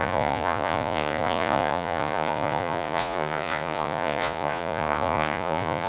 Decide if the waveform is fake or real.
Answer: fake